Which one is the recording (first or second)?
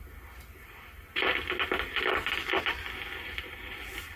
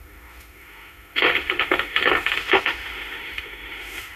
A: first